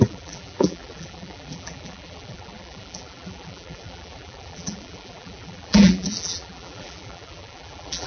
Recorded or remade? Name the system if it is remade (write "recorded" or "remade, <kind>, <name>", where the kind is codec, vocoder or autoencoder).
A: remade, vocoder, BigVGAN v2